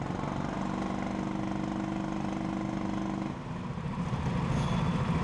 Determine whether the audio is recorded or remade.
recorded